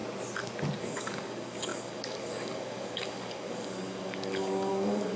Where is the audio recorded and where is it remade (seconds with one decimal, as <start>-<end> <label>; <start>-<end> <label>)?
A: 0.0-0.8 recorded; 0.8-5.2 remade